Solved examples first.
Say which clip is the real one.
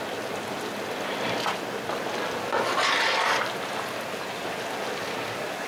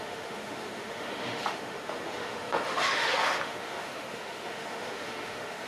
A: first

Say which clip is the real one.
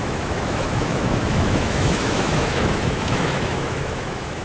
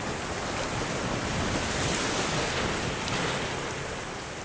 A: second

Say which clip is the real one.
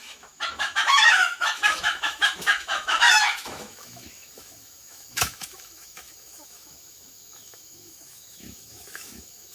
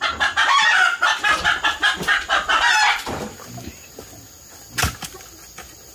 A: second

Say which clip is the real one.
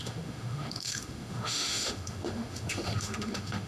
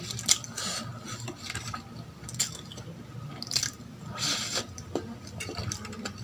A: second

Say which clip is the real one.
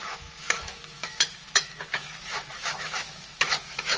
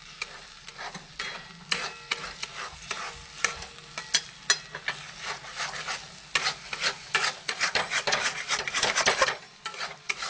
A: second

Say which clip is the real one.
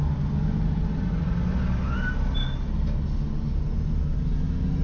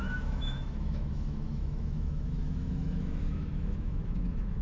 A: first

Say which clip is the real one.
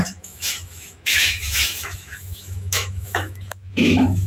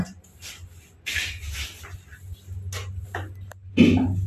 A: second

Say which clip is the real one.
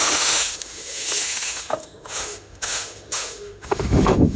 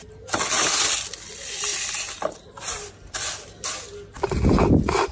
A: second